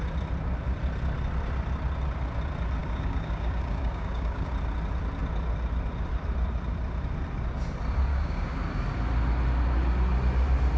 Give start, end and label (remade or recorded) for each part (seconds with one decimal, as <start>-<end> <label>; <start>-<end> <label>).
0.0-2.8 recorded; 2.8-4.5 remade; 4.5-8.1 recorded; 8.1-8.6 remade; 8.6-10.8 recorded